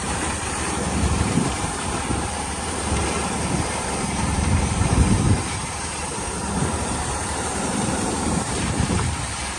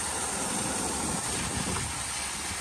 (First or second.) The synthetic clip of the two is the first